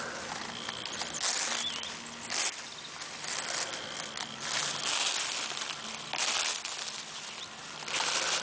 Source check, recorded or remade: recorded